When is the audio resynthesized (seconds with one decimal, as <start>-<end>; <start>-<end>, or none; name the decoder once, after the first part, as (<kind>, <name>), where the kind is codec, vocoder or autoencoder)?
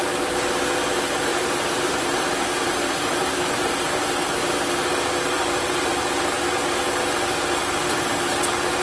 1.3-6.1 (vocoder, BigVGAN v2); 7.6-8.3